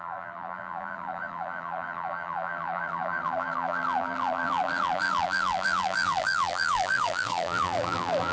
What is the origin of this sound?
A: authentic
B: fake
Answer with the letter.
B